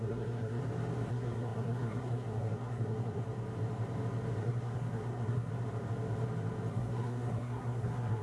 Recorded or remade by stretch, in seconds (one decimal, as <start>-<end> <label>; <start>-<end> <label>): 0.0-0.6 remade; 0.6-1.1 recorded; 1.1-3.2 remade; 3.2-4.4 recorded; 4.4-5.5 remade; 5.5-6.7 recorded; 6.7-8.2 remade